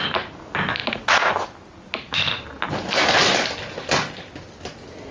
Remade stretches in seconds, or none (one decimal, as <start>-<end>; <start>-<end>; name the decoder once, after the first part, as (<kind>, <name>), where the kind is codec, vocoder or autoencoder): 0.8-1.3 (vocoder, Vocos)